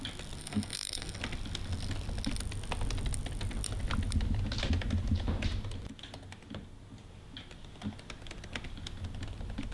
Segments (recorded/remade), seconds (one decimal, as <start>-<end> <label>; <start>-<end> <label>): 0.0-0.4 recorded; 0.4-1.2 remade; 1.2-9.7 recorded